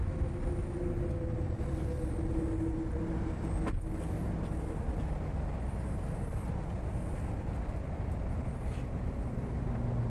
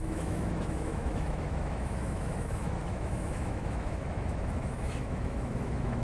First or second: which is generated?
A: second